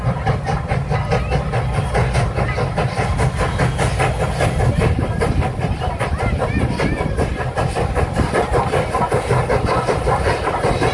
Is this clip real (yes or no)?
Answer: yes